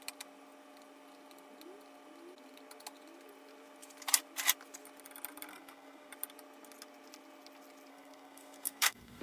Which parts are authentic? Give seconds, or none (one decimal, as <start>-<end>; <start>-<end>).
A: 0.0-5.5; 6.1-7.9